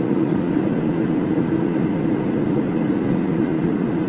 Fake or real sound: fake